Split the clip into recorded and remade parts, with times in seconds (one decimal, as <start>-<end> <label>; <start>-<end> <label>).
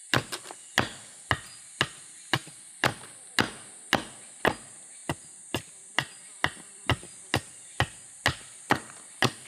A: 0.0-9.5 recorded